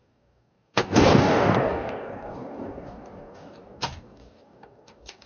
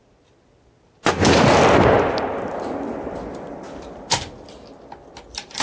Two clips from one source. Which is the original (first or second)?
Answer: second